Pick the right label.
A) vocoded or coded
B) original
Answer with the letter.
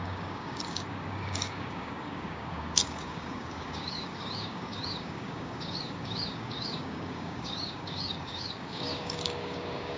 A